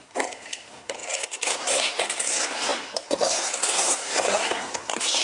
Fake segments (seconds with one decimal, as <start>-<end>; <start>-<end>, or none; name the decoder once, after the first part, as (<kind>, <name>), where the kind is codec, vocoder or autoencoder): 0.0-5.2 (codec, SNAC)